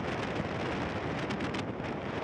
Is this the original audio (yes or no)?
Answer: yes